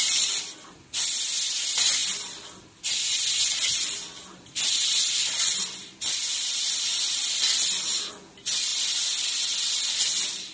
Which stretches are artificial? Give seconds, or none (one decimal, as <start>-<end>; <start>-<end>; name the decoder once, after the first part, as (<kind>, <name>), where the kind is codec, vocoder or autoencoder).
none